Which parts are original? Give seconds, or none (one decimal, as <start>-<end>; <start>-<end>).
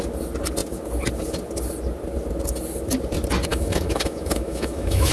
0.0-3.5